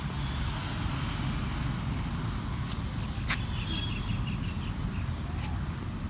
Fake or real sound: real